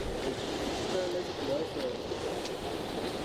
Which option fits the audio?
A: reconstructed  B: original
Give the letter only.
B